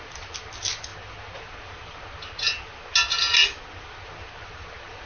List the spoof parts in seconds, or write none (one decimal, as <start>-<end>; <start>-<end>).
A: none